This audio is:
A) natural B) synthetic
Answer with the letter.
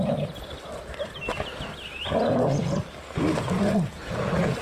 B